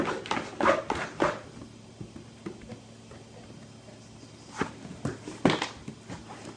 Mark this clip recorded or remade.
recorded